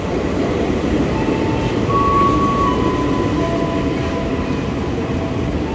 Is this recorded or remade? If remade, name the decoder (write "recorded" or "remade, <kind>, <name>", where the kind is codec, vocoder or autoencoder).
recorded